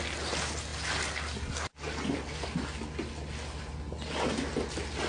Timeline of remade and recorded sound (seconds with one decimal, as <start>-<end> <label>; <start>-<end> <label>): 0.0-5.1 recorded